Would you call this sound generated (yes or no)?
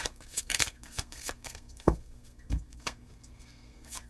yes